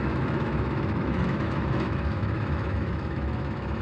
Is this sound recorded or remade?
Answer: remade